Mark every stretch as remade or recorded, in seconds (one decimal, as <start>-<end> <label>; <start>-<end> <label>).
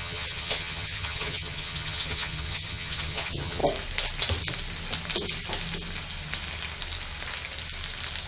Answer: 0.0-3.6 remade; 3.6-8.3 recorded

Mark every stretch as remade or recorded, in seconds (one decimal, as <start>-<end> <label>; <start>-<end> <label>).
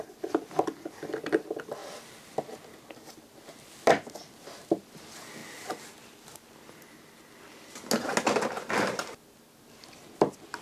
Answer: 0.0-10.6 recorded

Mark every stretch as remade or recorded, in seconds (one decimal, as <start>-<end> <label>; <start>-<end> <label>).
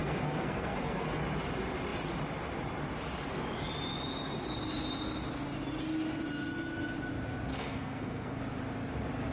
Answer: 0.0-1.2 remade; 1.2-7.5 recorded; 7.5-8.4 remade; 8.4-9.3 recorded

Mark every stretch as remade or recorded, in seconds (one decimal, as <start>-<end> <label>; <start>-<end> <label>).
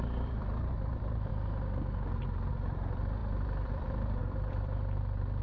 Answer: 0.0-1.3 remade; 1.3-2.5 recorded; 2.5-5.4 remade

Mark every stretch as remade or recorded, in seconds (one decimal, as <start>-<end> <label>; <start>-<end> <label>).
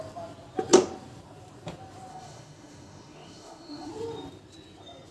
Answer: 0.0-2.1 recorded; 2.1-3.9 remade; 3.9-5.1 recorded